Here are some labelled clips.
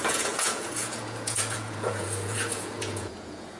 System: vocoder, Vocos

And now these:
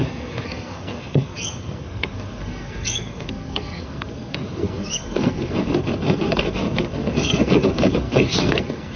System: codec, SNAC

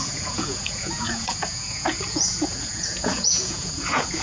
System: vocoder, Vocos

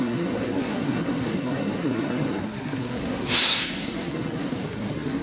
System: codec, SNAC